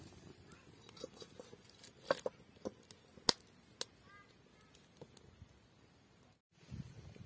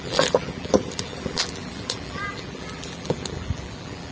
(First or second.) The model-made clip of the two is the second